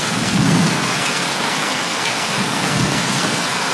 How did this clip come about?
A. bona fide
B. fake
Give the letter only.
B